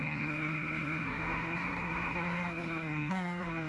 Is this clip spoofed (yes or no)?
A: yes